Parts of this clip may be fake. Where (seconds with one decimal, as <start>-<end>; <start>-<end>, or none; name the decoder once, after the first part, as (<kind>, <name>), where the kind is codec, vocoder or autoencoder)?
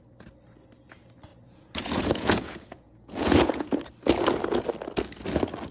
1.3-3.8 (vocoder, Vocos)